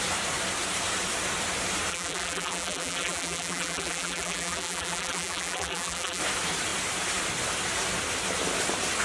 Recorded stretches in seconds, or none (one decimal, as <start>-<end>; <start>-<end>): 0.0-1.9; 6.2-9.0